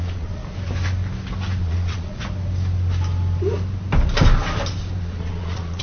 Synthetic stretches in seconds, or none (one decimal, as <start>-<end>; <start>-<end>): 0.0-0.4; 1.6-2.2; 5.0-5.8